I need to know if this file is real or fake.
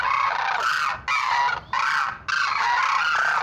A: real